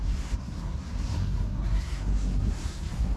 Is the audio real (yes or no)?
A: no